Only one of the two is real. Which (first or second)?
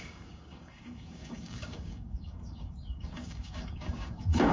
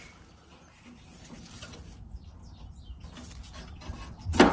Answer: second